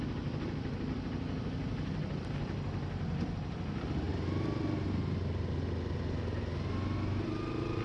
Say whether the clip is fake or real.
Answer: real